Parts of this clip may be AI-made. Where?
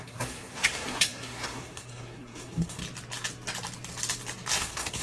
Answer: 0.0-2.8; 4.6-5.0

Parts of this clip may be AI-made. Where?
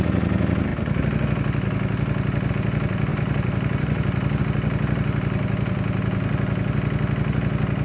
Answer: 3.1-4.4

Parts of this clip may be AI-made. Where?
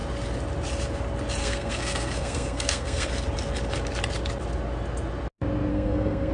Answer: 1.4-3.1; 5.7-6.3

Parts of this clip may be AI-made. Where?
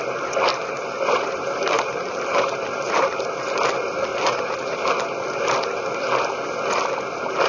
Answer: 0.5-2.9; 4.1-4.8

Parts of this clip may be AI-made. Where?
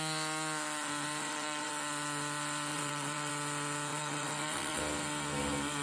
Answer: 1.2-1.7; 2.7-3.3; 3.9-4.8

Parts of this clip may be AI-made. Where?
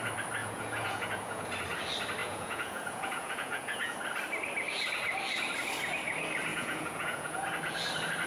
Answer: 0.4-1.5; 2.2-4.0; 6.5-7.5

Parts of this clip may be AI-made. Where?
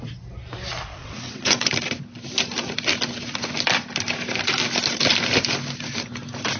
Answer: 0.9-1.7